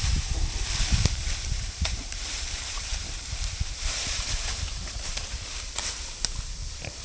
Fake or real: fake